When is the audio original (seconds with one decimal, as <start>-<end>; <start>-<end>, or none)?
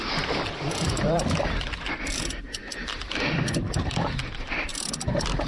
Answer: 4.7-5.5